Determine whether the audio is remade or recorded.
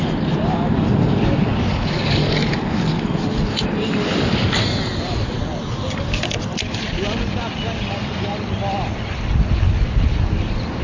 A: recorded